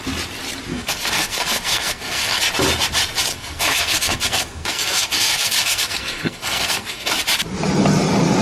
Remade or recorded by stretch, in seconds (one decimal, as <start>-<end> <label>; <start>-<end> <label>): 0.0-0.7 recorded; 0.7-2.4 remade; 2.4-3.3 recorded; 3.3-7.1 remade; 7.1-8.4 recorded